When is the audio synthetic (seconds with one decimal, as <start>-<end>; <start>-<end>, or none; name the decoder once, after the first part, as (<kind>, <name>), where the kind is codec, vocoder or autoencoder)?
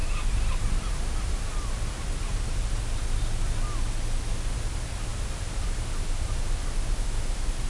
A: none